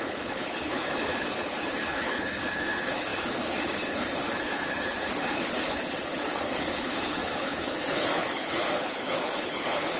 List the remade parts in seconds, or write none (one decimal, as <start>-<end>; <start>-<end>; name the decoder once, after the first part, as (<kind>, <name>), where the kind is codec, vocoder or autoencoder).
0.0-10.0 (codec, HILCodec)